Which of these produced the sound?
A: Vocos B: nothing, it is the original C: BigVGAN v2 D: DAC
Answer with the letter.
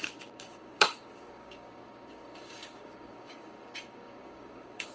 D